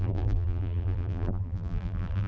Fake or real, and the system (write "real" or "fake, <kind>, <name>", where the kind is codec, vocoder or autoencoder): fake, vocoder, BigVGAN v2